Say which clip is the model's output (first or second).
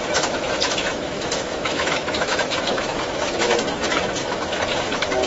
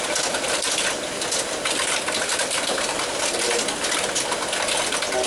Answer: first